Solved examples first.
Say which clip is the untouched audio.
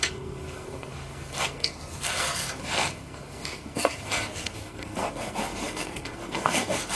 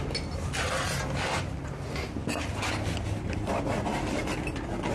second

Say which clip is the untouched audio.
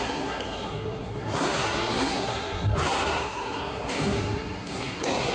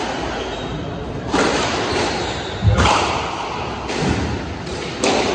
second